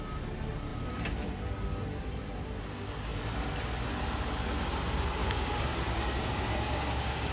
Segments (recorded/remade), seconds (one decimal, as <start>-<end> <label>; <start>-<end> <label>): 0.0-5.2 recorded; 5.2-7.3 remade